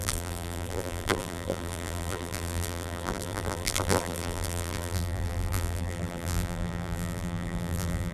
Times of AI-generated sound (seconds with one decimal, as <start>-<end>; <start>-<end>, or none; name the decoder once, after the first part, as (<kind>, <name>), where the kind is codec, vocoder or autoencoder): 0.0-8.1 (vocoder, BigVGAN v2)

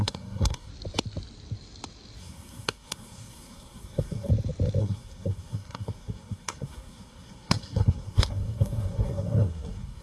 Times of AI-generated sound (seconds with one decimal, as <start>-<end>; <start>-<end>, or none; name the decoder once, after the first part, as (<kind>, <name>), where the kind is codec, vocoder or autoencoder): 0.0-0.7 (codec, SNAC); 2.2-4.3; 4.8-10.0

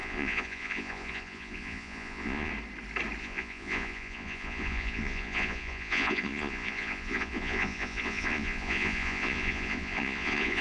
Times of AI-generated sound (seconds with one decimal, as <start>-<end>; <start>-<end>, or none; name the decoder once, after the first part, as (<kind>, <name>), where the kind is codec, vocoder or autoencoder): 0.0-2.5 (vocoder, Vocos); 3.2-10.6

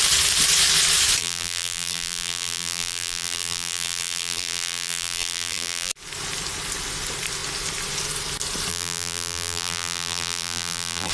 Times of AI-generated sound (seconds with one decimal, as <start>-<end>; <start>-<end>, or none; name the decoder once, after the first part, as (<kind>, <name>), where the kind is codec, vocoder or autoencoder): 1.2-5.9 (vocoder, BigVGAN v2); 8.7-11.1

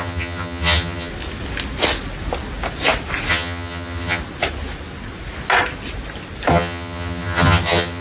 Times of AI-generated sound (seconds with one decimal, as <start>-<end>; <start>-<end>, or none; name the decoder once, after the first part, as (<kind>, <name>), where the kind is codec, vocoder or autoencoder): 0.0-1.1 (vocoder, HiFi-GAN); 3.3-4.2; 6.5-8.0

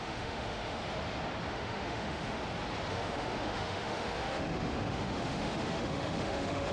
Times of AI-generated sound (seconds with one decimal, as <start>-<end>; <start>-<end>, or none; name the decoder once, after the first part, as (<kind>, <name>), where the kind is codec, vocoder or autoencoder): 0.0-0.8 (autoencoder, DAC-VAE); 1.5-2.4; 2.9-6.7

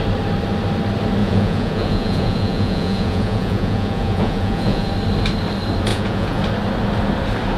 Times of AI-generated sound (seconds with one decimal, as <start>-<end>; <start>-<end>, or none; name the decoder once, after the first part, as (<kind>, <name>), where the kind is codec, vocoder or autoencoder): 1.2-4.9 (vocoder, Vocos); 5.9-6.4